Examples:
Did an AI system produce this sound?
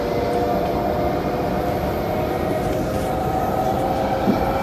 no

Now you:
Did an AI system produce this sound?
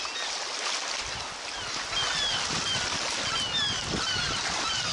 no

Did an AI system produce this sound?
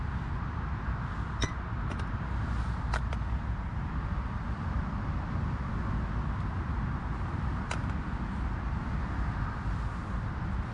no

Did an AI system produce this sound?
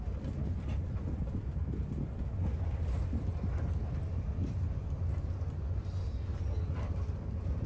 no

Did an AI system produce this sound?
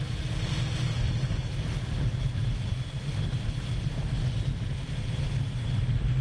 no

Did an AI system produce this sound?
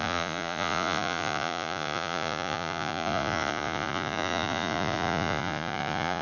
yes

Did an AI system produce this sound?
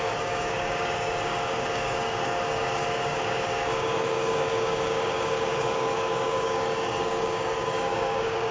yes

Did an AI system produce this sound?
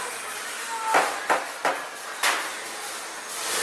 no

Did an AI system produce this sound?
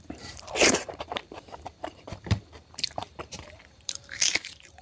yes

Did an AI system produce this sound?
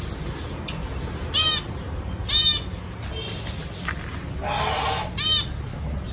no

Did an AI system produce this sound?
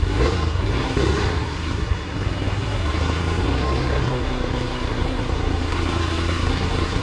yes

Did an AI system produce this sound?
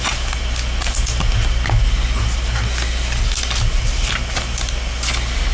no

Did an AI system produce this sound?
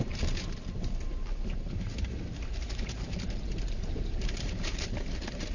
yes